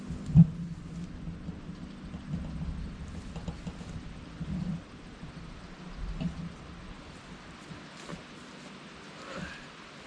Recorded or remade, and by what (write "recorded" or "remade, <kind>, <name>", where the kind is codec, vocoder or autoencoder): recorded